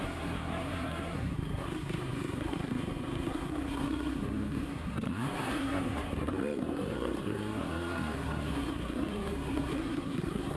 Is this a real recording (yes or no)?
no